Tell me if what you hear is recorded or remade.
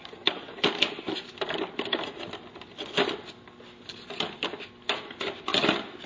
recorded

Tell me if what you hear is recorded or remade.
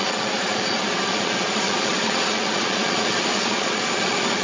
remade